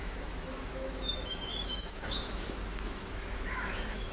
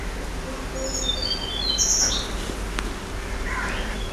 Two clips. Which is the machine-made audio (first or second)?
first